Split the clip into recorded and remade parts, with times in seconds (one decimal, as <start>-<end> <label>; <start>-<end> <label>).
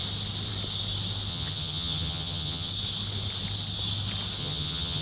0.0-1.3 recorded; 1.3-2.7 remade; 2.7-4.4 recorded; 4.4-5.0 remade